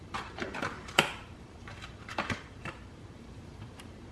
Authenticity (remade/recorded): remade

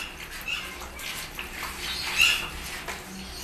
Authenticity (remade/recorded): recorded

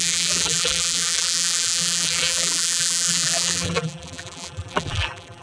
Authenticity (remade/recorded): remade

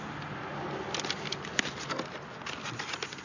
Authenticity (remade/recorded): recorded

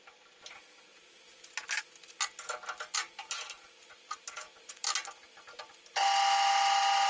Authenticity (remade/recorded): recorded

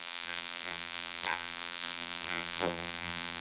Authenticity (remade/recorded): remade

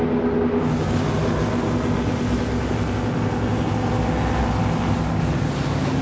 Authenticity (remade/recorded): recorded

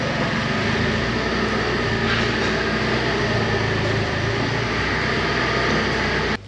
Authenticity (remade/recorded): recorded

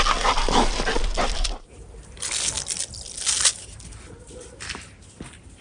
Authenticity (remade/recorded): recorded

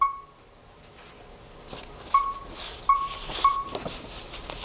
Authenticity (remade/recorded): recorded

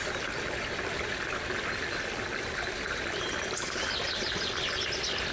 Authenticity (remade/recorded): recorded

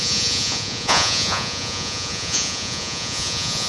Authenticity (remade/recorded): remade